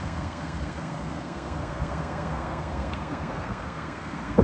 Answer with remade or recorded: remade